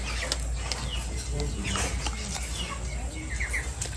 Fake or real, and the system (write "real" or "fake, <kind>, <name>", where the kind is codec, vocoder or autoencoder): real